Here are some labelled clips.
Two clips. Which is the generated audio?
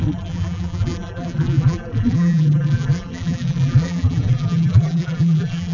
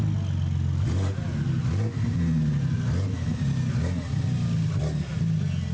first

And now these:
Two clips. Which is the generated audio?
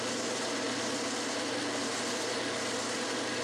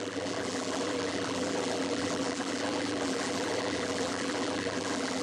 second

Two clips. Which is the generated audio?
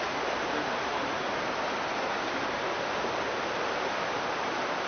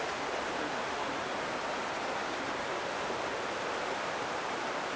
second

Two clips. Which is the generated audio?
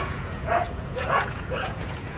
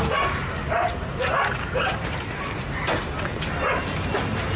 first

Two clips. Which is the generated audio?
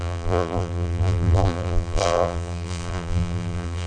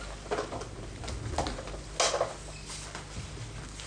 first